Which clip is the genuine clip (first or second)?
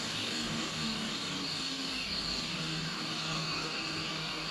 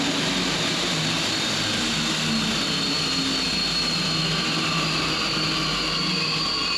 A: second